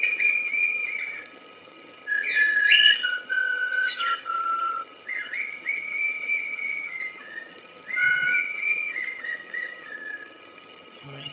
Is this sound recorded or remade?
remade